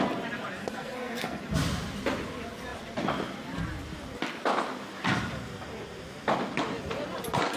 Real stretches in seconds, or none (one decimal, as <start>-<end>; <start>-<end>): 0.0-0.6; 1.4-7.6